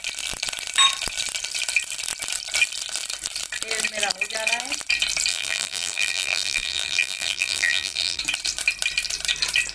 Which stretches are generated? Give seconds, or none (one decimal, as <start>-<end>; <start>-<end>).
5.3-8.2